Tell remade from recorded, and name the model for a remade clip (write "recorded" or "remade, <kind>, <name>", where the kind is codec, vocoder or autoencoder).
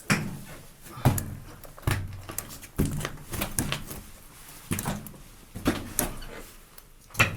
recorded